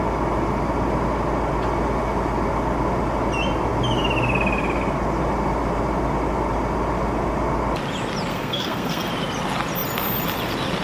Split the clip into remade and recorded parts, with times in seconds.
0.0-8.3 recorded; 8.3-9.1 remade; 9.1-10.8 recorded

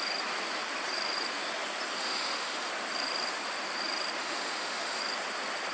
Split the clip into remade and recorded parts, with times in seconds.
0.0-2.0 recorded; 2.0-2.7 remade; 2.7-4.2 recorded; 4.2-5.0 remade; 5.0-5.7 recorded

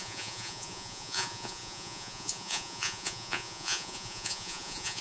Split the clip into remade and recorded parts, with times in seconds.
0.0-5.0 remade

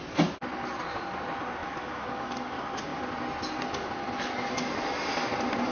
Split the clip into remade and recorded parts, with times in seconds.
0.0-1.6 recorded; 1.6-2.3 remade; 2.3-5.7 recorded

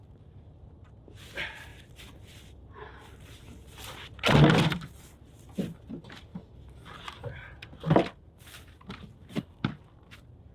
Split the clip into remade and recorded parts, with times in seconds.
0.0-10.5 recorded